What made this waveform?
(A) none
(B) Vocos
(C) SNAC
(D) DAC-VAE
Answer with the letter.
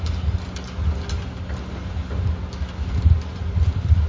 A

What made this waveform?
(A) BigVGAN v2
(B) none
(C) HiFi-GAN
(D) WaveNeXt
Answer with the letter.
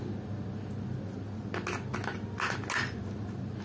B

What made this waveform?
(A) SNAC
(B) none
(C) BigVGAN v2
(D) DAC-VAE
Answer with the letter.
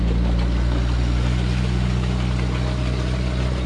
B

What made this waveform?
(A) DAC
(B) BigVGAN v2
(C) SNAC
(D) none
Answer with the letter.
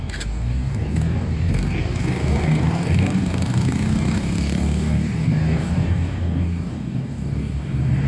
A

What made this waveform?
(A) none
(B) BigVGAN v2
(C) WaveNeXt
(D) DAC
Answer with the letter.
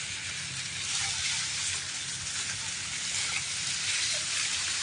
A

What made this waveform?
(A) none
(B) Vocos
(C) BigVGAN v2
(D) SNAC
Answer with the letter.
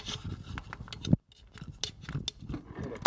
A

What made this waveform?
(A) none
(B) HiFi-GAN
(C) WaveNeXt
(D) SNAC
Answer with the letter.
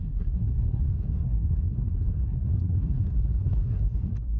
D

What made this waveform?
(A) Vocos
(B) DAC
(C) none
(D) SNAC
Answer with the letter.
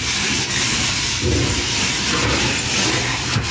C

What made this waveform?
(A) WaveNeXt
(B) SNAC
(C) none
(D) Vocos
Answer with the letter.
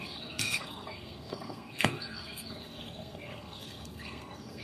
B